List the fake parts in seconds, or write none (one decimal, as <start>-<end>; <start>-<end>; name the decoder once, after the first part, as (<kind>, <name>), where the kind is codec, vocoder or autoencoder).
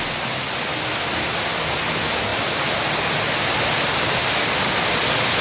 none